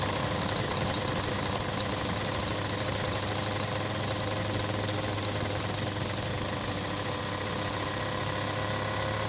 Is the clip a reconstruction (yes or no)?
no